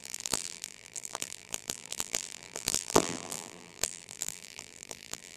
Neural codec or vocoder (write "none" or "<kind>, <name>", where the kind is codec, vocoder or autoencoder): vocoder, BigVGAN v2